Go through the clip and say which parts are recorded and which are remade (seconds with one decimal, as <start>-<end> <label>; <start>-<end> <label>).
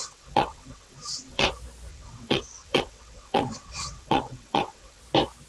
0.0-1.5 remade; 1.5-1.9 recorded; 1.9-5.0 remade; 5.0-5.5 recorded